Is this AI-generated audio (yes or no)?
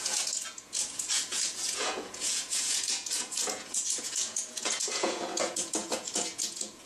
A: yes